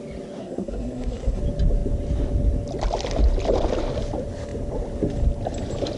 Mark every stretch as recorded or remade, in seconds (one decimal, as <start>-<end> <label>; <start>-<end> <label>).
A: 0.0-0.4 recorded; 0.4-1.4 remade; 1.4-6.0 recorded